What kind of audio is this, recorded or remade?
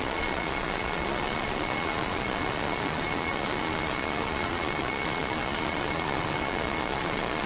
remade